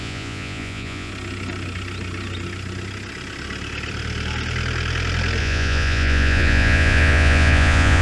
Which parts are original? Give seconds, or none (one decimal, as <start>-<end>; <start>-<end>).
1.1-5.4